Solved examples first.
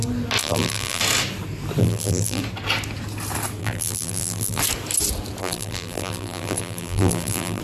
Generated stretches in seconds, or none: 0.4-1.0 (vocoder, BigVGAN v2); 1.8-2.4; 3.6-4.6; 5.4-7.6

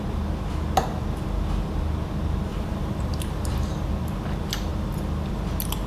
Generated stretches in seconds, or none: 2.5-3.9 (vocoder, BigVGAN v2)

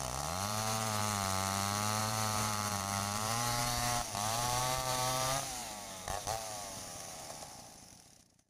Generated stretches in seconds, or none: 0.0-1.0 (vocoder, BigVGAN v2); 2.0-8.5

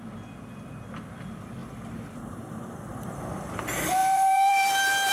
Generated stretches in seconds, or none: 1.6-3.2 (vocoder, BigVGAN v2); 4.0-5.1

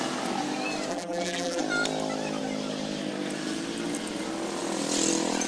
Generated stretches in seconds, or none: 0.9-1.6 (vocoder, BigVGAN v2)